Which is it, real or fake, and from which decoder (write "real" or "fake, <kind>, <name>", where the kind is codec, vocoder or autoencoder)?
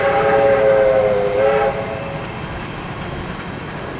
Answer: real